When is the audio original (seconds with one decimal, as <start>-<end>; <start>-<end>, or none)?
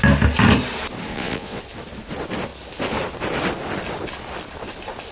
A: 0.0-1.1; 1.6-5.1